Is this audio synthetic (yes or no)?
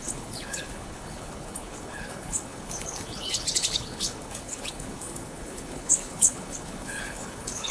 yes